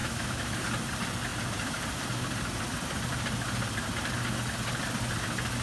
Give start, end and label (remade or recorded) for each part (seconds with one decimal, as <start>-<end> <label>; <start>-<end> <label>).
0.0-0.5 remade; 0.5-5.6 recorded